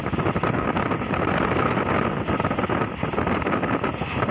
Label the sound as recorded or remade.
recorded